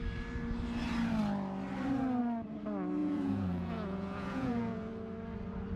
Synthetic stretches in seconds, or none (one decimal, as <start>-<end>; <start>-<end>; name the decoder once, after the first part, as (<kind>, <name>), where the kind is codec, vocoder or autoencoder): 3.0-4.9 (vocoder, Vocos)